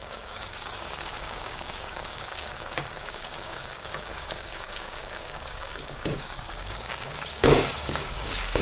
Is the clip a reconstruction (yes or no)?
yes